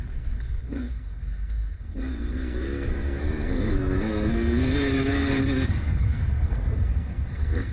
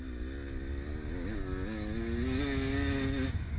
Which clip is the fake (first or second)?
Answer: first